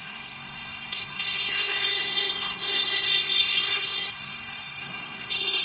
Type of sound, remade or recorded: remade